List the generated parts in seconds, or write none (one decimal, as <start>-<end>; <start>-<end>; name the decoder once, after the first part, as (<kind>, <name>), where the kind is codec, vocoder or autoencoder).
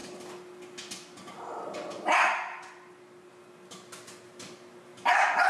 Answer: none